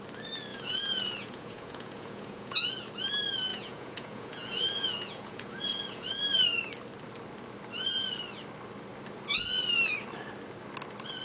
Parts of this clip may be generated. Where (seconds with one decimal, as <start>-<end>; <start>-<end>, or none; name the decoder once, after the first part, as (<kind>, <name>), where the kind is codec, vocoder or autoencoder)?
0.5-2.6 (vocoder, Vocos); 3.5-6.2